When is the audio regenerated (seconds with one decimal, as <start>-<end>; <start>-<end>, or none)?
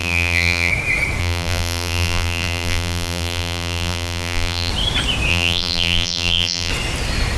0.0-0.7; 1.2-4.7; 5.3-6.7